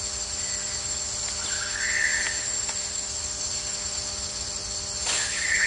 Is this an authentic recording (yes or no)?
yes